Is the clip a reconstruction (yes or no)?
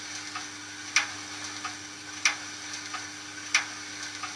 no